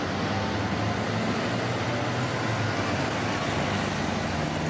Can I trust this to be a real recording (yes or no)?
yes